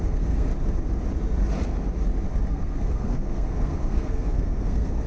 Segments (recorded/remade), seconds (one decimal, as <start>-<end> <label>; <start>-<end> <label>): 0.0-0.5 remade; 0.5-2.5 recorded; 2.5-5.1 remade